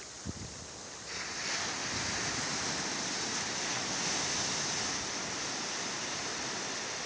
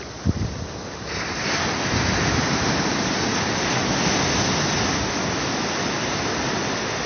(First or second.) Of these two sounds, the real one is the second